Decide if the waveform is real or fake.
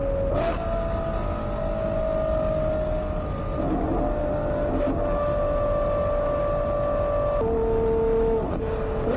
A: real